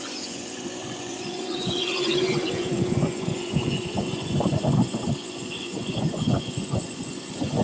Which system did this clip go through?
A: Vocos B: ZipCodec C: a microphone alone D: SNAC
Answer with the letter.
A